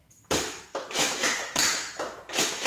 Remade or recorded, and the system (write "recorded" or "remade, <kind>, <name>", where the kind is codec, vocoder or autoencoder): remade, autoencoder, DAC-VAE